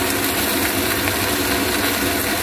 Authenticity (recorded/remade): recorded